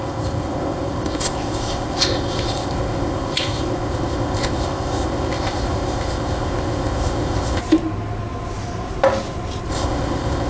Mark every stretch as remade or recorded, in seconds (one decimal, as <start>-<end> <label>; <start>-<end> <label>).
0.0-7.6 remade; 7.6-9.7 recorded; 9.7-10.5 remade